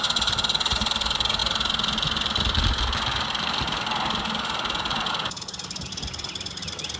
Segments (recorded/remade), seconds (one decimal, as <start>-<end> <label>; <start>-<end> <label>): 0.0-7.0 recorded